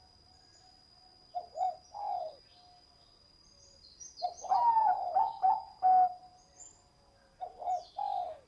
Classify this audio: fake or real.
real